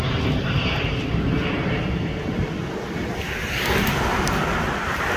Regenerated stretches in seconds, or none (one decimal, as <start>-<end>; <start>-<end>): 0.4-2.6